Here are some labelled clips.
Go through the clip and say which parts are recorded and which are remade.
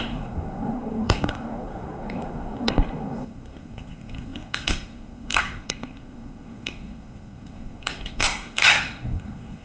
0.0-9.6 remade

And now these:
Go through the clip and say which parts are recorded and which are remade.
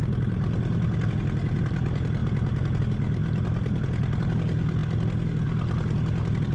0.0-6.5 recorded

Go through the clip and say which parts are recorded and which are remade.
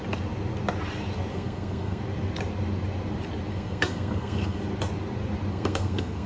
0.0-1.3 recorded; 1.3-2.0 remade; 2.0-3.5 recorded; 3.5-4.6 remade; 4.6-5.5 recorded; 5.5-6.3 remade